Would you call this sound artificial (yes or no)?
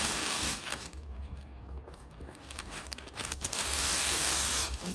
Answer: yes